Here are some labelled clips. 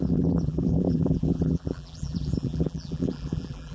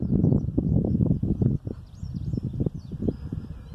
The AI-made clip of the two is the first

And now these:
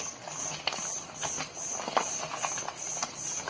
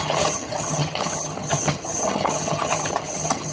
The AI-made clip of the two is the second